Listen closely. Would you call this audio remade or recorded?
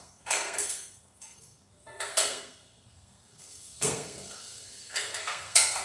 remade